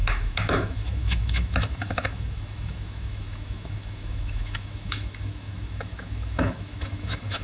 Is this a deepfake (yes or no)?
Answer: yes